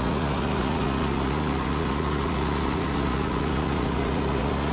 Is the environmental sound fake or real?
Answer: fake